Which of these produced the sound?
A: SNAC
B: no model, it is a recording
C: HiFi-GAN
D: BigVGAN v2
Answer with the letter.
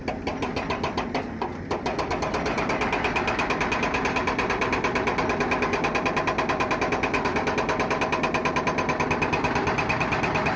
B